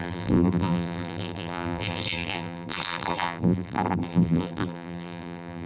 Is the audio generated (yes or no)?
yes